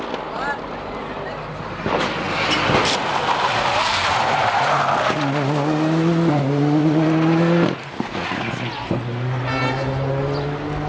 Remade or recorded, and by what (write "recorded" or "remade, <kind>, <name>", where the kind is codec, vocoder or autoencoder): recorded